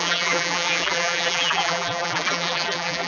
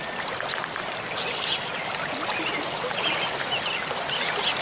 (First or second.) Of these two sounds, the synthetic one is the first